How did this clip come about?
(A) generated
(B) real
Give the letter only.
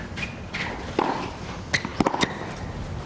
B